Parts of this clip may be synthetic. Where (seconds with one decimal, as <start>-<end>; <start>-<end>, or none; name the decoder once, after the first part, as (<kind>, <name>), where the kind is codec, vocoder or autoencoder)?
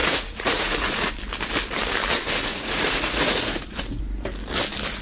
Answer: 0.0-1.1 (vocoder, Vocos); 2.5-4.0